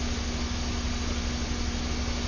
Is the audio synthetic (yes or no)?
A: no